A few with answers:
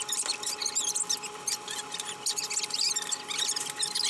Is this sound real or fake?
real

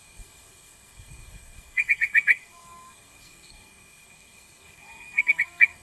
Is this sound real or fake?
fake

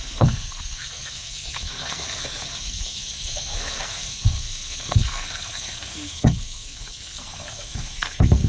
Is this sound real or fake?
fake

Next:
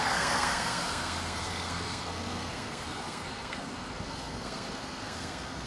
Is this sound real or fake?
fake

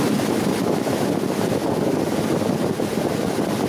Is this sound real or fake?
real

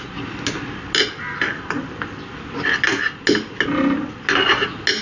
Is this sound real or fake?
real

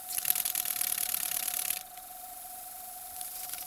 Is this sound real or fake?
real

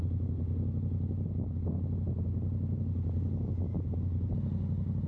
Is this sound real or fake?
real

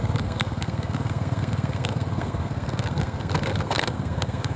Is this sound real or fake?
fake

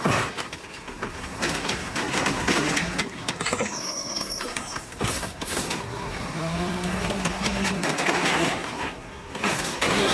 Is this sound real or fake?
fake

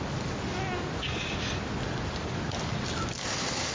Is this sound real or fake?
real